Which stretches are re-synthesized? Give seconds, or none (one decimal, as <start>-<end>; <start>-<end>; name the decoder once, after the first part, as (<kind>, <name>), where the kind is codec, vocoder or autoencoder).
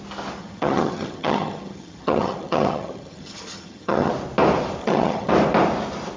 0.4-4.1 (vocoder, HiFi-GAN); 4.8-5.3